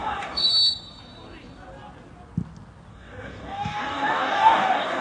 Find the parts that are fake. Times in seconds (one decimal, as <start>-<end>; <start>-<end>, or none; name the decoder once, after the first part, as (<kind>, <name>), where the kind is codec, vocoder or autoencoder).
0.0-0.5 (codec, DAC); 2.9-5.0